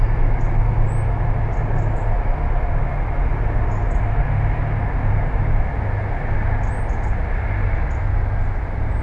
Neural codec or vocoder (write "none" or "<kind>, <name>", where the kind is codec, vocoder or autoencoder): none